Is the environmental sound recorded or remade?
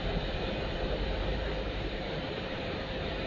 remade